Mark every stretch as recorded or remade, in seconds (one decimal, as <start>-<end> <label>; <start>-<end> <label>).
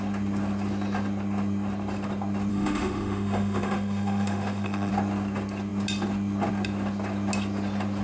0.0-2.5 recorded; 2.5-4.9 remade; 4.9-8.0 recorded